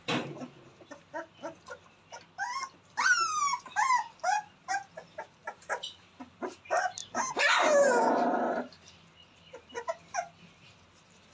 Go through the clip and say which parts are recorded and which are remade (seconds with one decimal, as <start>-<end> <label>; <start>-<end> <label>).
0.0-5.4 recorded; 5.4-6.5 remade; 6.5-11.3 recorded